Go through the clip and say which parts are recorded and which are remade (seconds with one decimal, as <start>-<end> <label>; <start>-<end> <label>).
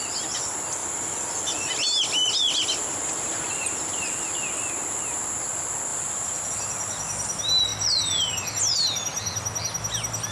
0.0-0.8 recorded; 0.8-4.7 remade; 4.7-5.9 recorded; 5.9-6.5 remade; 6.5-10.3 recorded